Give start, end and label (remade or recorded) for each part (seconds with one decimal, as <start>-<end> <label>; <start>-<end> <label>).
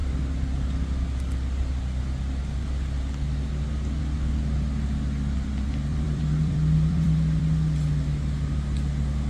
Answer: 0.0-5.9 recorded; 5.9-7.4 remade; 7.4-9.3 recorded